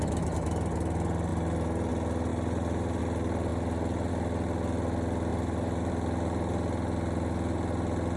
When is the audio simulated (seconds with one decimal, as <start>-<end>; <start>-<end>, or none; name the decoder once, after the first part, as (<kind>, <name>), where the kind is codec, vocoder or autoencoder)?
2.3-3.0 (vocoder, BigVGAN v2); 5.3-5.9